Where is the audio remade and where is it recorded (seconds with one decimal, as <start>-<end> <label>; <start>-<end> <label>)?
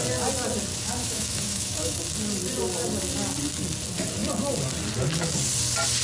0.0-0.7 recorded; 0.7-2.0 remade; 2.0-6.0 recorded